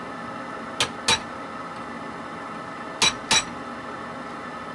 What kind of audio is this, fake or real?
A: real